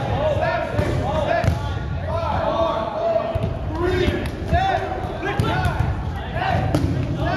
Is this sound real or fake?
real